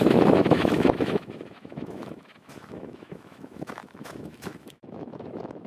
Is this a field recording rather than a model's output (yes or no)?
no